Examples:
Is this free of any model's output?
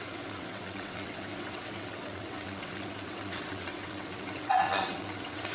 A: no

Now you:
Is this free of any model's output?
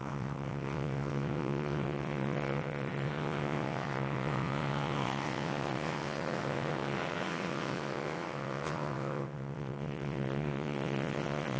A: no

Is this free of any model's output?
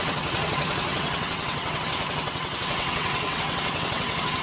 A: no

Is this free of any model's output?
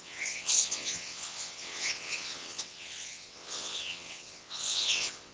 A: no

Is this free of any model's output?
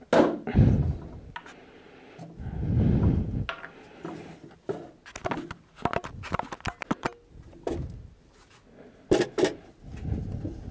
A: yes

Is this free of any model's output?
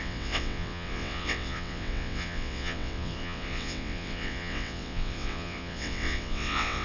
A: no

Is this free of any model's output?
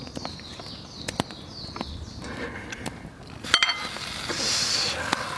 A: yes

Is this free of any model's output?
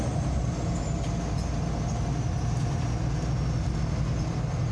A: yes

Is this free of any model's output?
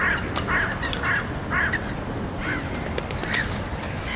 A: yes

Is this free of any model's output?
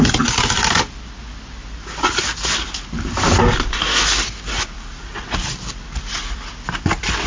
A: yes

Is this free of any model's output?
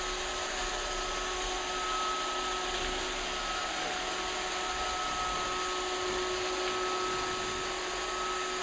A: yes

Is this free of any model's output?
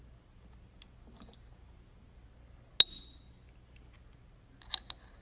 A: yes